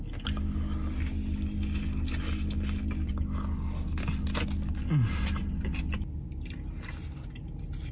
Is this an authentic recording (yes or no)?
yes